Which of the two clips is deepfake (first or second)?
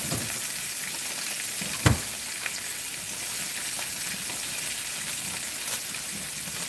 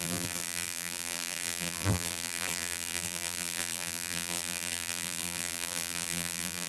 second